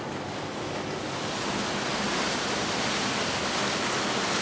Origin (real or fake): real